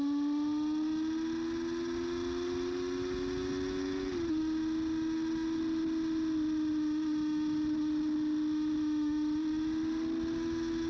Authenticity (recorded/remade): recorded